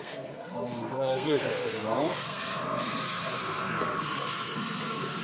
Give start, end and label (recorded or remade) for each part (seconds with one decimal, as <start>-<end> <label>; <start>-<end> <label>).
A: 0.0-5.2 remade